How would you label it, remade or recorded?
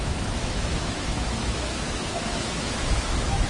remade